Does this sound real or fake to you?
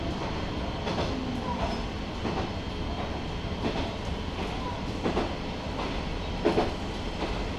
real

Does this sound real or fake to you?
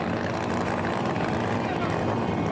real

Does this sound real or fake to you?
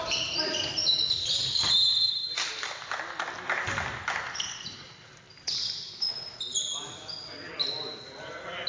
real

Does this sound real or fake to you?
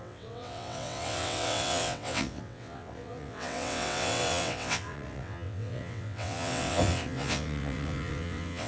fake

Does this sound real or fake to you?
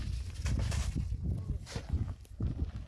real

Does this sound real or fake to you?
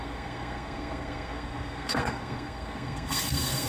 fake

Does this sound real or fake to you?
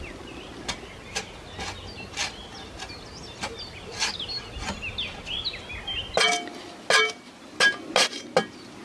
real